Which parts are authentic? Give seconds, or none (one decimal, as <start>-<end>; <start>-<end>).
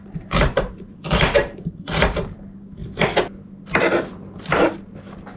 2.8-4.6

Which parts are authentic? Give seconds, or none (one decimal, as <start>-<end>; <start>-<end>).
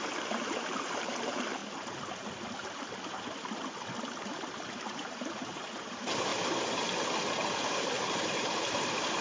1.6-4.9; 6.3-7.3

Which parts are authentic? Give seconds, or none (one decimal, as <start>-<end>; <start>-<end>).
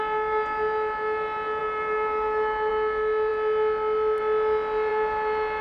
0.0-1.6; 2.7-4.9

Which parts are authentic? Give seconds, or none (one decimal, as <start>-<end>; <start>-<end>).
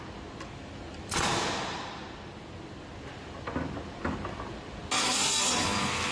0.0-6.1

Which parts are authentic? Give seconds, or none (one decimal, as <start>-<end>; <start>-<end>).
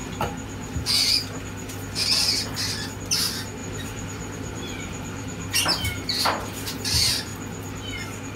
0.0-3.2; 7.3-8.4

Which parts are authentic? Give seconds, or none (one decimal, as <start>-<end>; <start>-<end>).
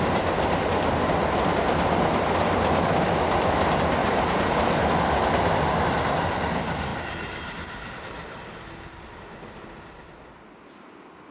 0.0-4.0; 4.9-6.9; 7.9-11.3